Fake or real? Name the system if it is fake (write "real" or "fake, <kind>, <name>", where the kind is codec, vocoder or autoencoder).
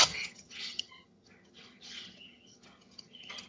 fake, vocoder, HiFi-GAN